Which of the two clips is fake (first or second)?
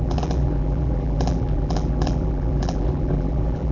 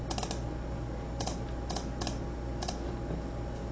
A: first